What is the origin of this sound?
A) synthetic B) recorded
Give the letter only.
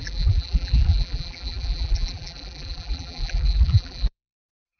A